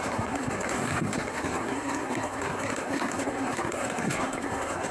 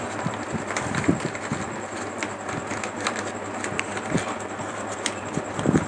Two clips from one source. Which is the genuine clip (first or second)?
second